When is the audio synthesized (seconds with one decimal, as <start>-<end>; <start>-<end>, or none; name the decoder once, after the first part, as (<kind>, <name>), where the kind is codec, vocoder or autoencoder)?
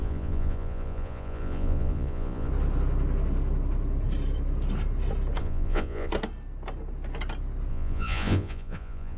0.0-2.5 (vocoder, Vocos); 5.4-6.1; 7.7-9.2